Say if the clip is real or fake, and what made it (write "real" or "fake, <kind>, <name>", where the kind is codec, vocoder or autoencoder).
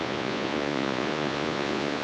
fake, vocoder, Vocos